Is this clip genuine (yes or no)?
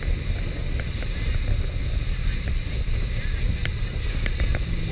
yes